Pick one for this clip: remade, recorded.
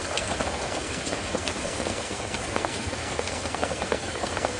remade